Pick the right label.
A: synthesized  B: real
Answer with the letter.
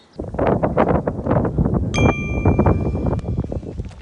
B